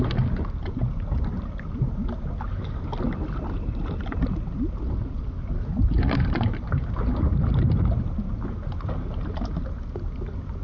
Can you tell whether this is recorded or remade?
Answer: recorded